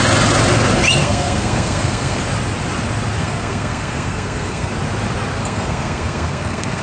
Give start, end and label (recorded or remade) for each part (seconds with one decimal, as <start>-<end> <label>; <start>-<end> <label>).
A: 0.0-1.0 recorded; 1.0-2.2 remade; 2.2-3.2 recorded; 3.2-4.7 remade; 4.7-5.4 recorded; 5.4-6.8 remade